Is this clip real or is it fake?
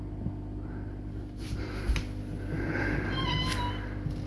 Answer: real